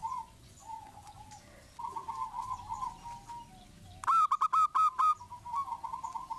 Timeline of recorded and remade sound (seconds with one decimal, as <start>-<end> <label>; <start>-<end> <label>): 0.0-1.3 remade; 1.3-6.4 recorded